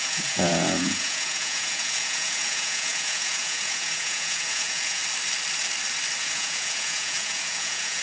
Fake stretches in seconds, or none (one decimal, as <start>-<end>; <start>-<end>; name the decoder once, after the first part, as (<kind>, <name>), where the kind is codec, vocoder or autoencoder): 0.0-5.0 (vocoder, Vocos); 6.2-8.0